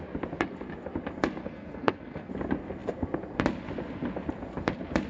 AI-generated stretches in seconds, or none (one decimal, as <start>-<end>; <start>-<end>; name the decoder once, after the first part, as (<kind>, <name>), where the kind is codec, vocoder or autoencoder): 1.4-2.3 (codec, SNAC)